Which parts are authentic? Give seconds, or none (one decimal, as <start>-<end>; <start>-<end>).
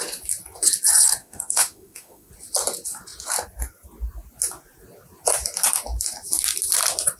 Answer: 0.0-1.2; 2.3-7.2